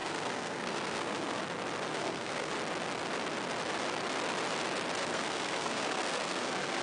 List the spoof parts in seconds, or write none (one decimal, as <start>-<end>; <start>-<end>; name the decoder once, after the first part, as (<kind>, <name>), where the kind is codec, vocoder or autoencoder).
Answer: 0.0-1.4 (codec, SNAC); 1.9-2.5; 5.0-6.8